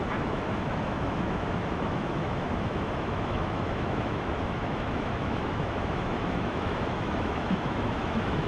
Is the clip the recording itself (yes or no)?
no